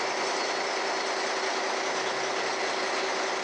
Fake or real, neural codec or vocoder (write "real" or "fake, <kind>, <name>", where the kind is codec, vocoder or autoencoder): real